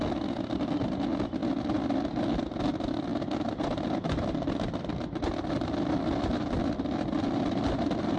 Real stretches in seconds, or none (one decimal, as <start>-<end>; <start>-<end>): 0.0-3.1